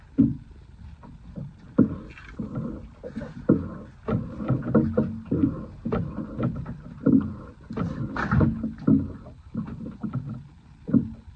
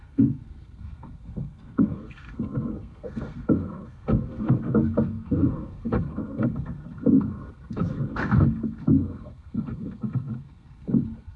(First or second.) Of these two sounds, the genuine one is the first